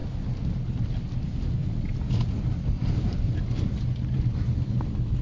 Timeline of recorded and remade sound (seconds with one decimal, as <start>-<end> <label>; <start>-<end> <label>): 0.0-2.8 recorded; 2.8-3.4 remade; 3.4-5.2 recorded